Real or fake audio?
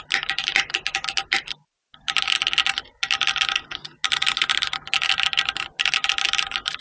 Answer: real